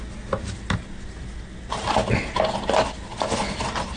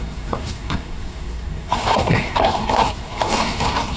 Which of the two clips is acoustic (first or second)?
first